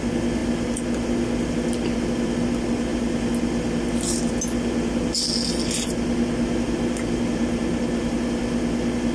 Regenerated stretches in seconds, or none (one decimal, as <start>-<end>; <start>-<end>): none